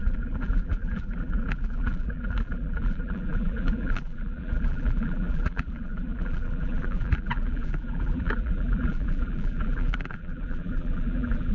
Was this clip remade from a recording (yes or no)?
yes